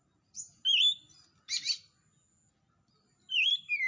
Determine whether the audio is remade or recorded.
recorded